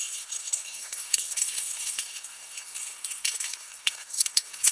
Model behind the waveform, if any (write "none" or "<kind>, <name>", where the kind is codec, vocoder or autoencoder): codec, SNAC